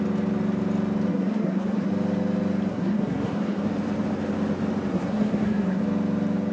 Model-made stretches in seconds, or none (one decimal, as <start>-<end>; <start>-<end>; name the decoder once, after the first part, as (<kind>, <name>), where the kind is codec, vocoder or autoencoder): 1.1-1.9 (codec, SNAC); 2.7-3.7; 4.9-5.8